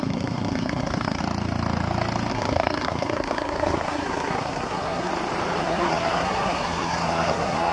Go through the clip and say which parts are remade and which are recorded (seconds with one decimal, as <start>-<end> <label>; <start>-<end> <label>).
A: 0.0-1.2 remade; 1.2-2.3 recorded; 2.3-5.1 remade; 5.1-5.6 recorded; 5.6-7.7 remade